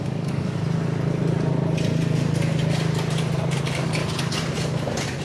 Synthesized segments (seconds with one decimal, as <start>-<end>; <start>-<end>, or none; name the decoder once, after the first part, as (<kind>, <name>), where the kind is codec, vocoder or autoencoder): 0.0-0.6 (codec, DAC); 3.6-4.0